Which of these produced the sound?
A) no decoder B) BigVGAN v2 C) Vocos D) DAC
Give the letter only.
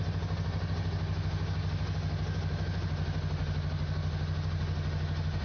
A